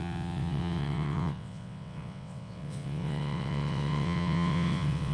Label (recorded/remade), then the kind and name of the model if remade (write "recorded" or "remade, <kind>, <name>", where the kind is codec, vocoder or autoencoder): remade, vocoder, WaveNeXt